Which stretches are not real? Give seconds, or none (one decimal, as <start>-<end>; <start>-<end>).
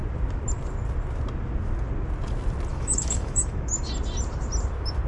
2.7-3.9